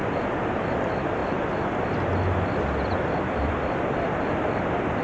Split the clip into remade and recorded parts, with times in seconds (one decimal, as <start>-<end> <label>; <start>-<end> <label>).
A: 0.0-5.0 recorded